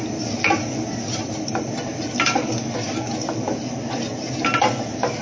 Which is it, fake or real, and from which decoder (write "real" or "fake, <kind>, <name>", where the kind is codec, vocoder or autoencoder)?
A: real